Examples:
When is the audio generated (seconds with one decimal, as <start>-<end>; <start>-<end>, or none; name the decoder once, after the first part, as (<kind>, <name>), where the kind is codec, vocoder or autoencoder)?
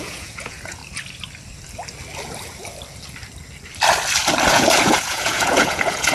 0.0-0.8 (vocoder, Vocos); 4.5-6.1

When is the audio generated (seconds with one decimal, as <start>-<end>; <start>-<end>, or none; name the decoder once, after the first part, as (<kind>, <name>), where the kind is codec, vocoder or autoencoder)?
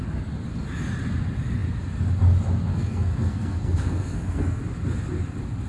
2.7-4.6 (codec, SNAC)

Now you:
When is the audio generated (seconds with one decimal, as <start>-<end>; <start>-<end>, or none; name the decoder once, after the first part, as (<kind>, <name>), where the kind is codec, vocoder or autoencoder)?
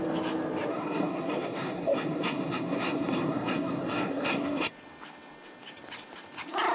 0.7-4.7 (codec, SNAC)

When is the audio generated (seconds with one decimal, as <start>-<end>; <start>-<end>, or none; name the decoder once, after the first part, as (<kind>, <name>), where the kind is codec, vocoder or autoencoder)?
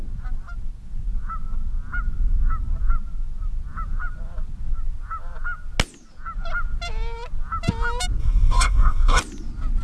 8.2-9.2 (codec, DAC)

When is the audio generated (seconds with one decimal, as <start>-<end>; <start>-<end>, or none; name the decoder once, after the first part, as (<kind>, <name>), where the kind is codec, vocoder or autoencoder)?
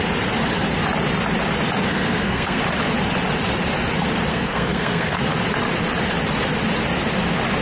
1.9-2.6 (codec, SNAC); 4.3-5.2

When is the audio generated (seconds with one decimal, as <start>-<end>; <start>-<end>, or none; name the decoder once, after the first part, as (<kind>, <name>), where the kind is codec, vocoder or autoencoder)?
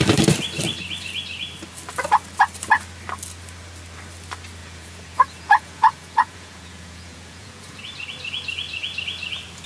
4.6-7.8 (vocoder, Vocos)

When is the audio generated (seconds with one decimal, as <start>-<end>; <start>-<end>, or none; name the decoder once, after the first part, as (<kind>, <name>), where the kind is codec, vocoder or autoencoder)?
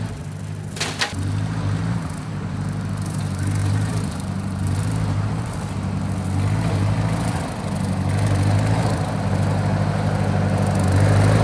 1.8-3.2 (vocoder, BigVGAN v2); 3.6-5.7